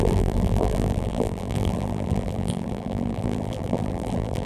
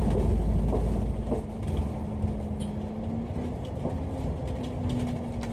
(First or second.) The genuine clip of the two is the second